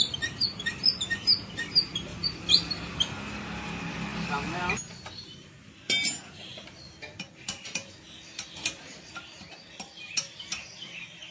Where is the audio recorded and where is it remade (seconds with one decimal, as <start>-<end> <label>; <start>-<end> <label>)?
0.0-2.1 recorded; 2.1-2.9 remade; 2.9-4.1 recorded; 4.1-4.6 remade; 4.6-11.3 recorded